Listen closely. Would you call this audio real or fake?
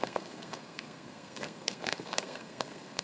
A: fake